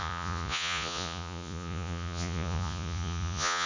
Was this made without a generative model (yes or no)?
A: no